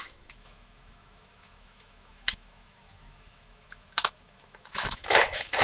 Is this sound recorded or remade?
remade